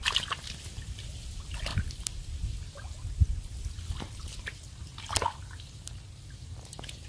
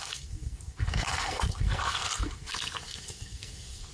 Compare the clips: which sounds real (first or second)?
first